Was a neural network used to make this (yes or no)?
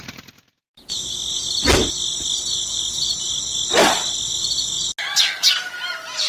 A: no